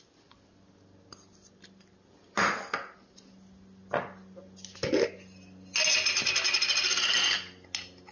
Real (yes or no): yes